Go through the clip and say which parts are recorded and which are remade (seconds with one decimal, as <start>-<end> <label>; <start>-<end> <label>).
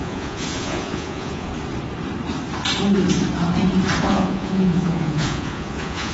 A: 0.0-1.5 remade; 1.5-4.0 recorded; 4.0-6.1 remade